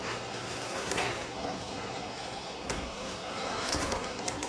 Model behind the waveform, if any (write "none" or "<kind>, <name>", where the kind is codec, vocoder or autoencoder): codec, SNAC